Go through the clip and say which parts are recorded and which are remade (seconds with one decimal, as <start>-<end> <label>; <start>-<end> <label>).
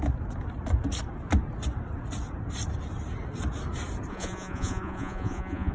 0.0-4.1 recorded; 4.1-5.7 remade